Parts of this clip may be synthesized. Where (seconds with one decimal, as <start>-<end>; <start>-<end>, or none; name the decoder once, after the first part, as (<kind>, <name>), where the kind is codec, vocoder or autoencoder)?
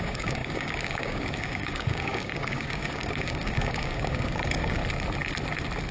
0.0-4.8 (codec, DAC)